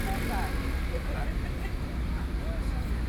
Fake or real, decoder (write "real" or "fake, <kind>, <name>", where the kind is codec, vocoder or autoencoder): real